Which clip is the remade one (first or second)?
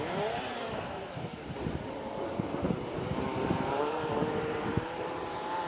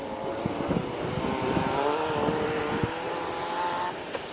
first